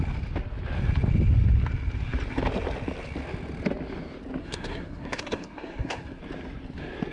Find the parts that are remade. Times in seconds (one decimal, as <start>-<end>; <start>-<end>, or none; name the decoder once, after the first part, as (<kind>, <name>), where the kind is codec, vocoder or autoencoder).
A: 4.4-6.2 (codec, SNAC)